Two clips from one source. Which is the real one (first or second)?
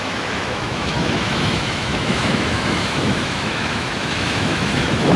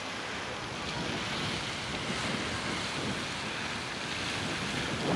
second